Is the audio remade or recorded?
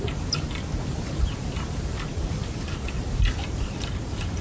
recorded